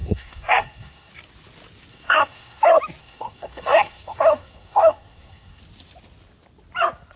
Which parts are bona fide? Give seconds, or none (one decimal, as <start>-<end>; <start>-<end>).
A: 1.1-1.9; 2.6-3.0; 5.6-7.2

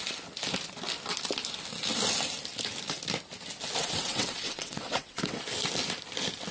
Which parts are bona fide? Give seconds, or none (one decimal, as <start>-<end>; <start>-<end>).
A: 0.0-3.8; 5.4-6.5

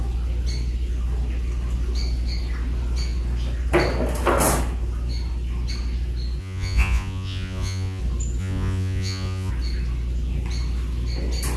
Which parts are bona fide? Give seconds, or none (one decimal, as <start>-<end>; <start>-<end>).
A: 0.0-6.4; 8.0-8.4; 9.5-11.6

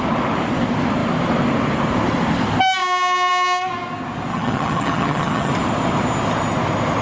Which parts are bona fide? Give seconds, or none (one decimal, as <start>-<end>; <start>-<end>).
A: 0.0-4.3; 5.5-7.0

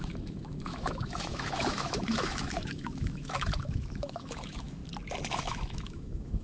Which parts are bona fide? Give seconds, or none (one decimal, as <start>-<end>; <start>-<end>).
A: 4.8-5.3